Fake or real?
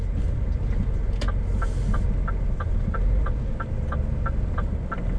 real